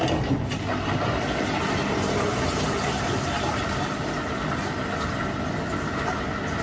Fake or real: real